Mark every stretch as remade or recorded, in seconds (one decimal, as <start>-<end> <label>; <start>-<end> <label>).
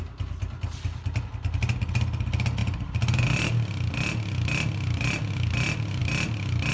0.0-6.7 recorded